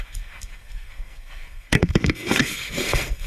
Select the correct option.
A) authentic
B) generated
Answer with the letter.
B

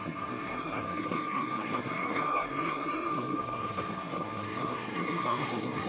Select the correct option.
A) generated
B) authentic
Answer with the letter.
A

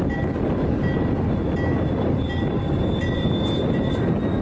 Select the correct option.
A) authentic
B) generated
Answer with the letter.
A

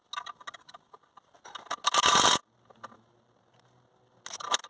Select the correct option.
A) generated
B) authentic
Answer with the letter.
B